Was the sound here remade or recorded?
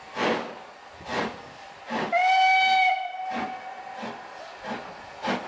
recorded